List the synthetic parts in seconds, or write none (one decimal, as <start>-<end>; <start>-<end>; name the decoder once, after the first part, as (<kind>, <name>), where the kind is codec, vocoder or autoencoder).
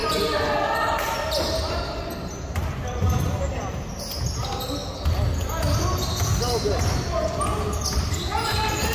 none